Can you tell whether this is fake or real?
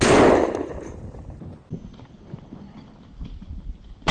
real